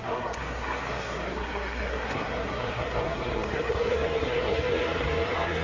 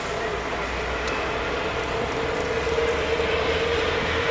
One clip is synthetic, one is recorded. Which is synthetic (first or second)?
first